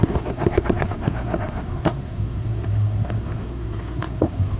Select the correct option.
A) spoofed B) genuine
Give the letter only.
A